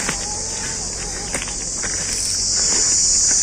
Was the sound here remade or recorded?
recorded